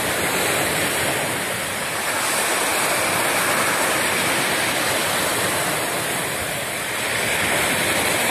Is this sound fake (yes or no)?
no